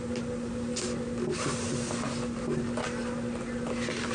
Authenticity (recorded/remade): recorded